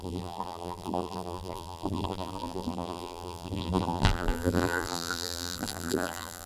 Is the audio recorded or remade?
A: remade